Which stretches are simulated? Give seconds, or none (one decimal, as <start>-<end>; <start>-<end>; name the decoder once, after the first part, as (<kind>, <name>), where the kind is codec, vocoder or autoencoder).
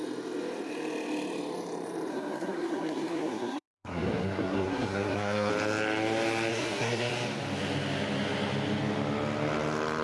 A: 2.1-5.5 (codec, SNAC); 6.5-7.1